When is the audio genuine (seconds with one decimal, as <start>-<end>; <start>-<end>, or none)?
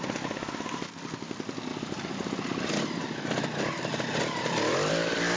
0.0-5.4